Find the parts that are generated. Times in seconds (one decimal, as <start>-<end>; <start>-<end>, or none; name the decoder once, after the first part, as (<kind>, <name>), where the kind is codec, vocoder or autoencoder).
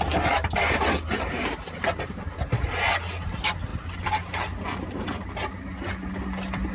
none